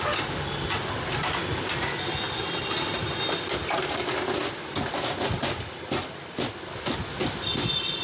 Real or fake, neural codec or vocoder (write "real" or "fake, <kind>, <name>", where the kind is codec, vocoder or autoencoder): real